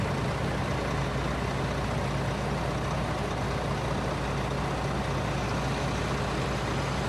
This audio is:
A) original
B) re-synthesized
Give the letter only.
A